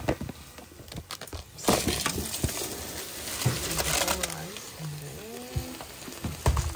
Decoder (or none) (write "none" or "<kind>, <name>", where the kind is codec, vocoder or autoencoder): none